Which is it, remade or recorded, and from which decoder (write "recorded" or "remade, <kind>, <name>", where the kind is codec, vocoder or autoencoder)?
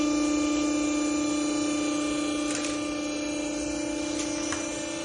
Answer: recorded